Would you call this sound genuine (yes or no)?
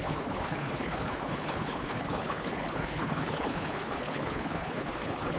no